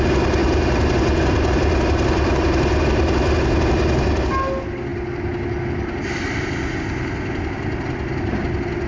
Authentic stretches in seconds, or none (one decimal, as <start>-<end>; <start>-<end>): 0.0-8.9